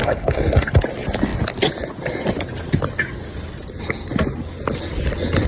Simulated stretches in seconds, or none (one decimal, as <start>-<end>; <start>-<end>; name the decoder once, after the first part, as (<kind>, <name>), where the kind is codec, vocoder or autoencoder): 0.0-0.7 (codec, SNAC)